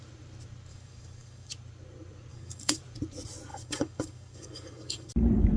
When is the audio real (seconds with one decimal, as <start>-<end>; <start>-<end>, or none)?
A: 0.0-0.7; 1.5-2.3; 2.8-3.5; 5.1-5.6